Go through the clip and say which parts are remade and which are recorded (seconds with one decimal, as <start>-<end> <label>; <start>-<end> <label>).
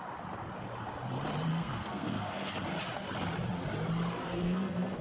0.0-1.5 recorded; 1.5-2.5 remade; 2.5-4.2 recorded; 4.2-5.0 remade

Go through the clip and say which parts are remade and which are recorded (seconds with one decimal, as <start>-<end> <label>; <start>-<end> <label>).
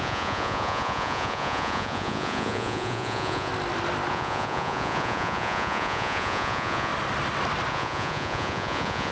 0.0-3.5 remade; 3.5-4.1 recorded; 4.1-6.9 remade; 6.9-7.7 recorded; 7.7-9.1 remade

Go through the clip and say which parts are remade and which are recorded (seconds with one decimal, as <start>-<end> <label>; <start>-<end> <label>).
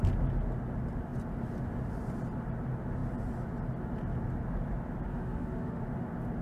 0.0-5.1 recorded; 5.1-5.8 remade; 5.8-6.4 recorded